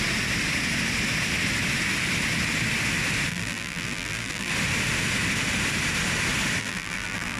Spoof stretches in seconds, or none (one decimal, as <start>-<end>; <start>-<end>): 3.3-4.5; 6.6-7.4